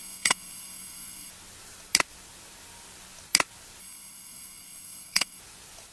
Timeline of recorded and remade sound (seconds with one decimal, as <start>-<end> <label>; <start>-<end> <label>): 0.0-1.3 remade; 1.3-3.8 recorded; 3.8-5.4 remade; 5.4-5.9 recorded